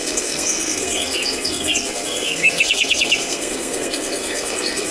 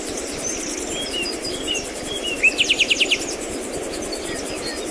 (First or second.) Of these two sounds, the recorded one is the second